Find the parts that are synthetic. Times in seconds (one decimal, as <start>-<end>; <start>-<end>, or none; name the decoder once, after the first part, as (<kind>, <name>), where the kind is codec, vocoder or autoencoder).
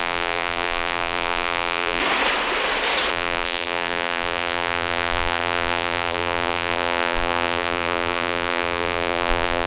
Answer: 0.0-2.0 (vocoder, BigVGAN v2); 3.1-9.7